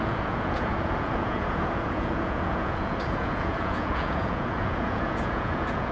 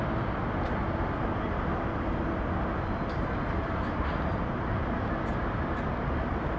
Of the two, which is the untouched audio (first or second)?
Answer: second